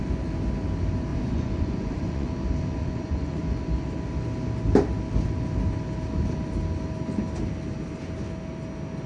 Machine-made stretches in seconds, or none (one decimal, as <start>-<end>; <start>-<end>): 1.1-2.3; 2.8-3.4